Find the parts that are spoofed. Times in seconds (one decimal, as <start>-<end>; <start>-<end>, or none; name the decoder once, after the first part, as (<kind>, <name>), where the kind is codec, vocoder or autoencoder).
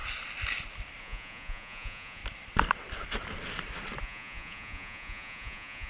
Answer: 1.0-2.2 (vocoder, Vocos); 4.0-5.9